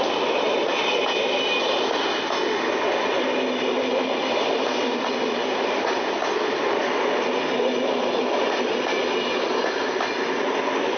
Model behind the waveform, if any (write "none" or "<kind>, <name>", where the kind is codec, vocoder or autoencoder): none